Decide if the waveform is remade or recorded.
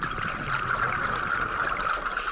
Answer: recorded